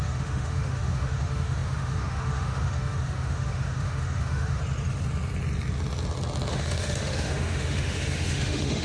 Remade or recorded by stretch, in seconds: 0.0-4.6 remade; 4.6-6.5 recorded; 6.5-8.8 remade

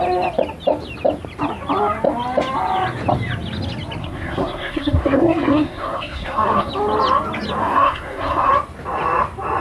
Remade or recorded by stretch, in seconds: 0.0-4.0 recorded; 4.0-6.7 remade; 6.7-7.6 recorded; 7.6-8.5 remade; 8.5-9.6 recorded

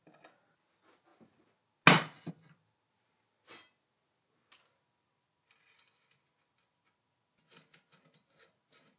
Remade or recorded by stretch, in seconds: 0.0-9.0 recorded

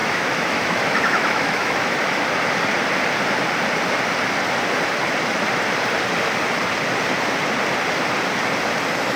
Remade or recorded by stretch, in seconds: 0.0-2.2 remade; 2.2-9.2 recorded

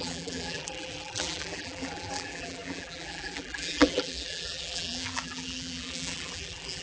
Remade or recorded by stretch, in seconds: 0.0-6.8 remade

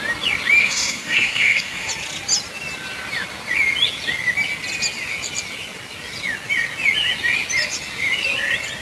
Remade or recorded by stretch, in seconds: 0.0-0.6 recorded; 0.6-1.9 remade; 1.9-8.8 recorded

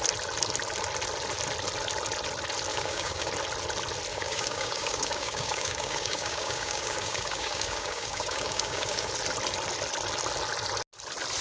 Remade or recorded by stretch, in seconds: 0.0-2.7 recorded; 2.7-3.3 remade; 3.3-4.1 recorded; 4.1-9.1 remade; 9.1-11.4 recorded

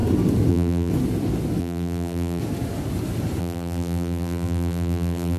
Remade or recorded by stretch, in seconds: 0.0-0.5 recorded; 0.5-0.9 remade; 0.9-1.6 recorded; 1.6-2.4 remade; 2.4-3.4 recorded; 3.4-5.4 remade